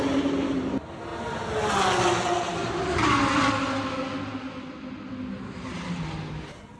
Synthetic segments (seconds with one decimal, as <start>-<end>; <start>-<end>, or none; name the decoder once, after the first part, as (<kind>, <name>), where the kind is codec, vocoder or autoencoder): none